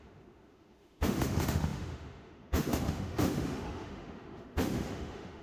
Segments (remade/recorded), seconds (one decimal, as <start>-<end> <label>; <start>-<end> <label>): 0.0-5.4 remade